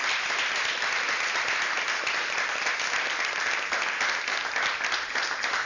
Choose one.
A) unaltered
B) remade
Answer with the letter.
A